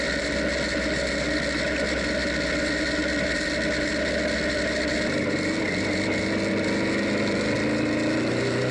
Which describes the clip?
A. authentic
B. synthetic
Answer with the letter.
A